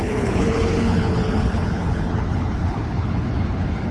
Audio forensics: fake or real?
fake